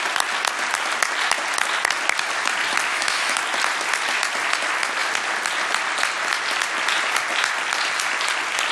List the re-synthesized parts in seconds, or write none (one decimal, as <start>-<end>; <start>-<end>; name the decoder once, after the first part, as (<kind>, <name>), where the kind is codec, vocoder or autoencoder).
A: 2.9-3.4 (autoencoder, DAC-VAE)